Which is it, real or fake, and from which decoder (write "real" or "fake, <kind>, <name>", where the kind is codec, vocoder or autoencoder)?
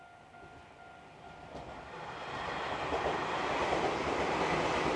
real